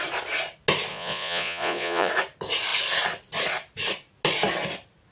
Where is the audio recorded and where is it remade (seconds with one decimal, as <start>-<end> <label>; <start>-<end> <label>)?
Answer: 0.0-0.9 recorded; 0.9-2.1 remade; 2.1-5.1 recorded